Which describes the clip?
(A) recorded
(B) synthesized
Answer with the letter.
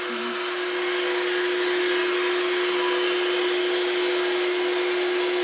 A